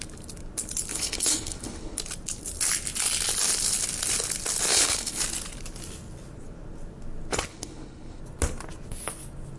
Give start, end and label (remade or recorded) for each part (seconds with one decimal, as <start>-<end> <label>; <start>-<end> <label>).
0.0-0.9 recorded; 0.9-2.0 remade; 2.0-4.7 recorded; 4.7-5.2 remade; 5.2-7.5 recorded; 7.5-8.2 remade; 8.2-9.6 recorded